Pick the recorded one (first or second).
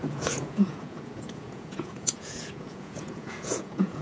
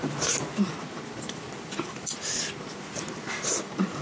second